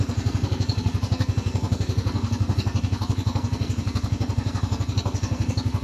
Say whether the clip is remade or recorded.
remade